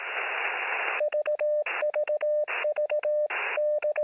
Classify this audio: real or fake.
real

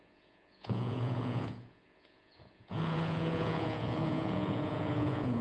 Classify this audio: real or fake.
fake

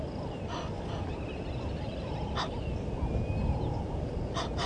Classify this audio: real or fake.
real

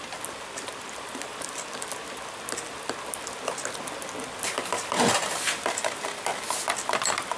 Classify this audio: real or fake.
real